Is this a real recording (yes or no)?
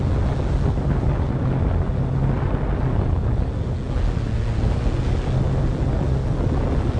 yes